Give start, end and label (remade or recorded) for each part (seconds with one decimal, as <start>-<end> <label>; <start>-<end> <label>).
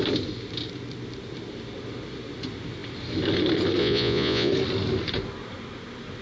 0.0-3.8 recorded; 3.8-4.5 remade; 4.5-6.2 recorded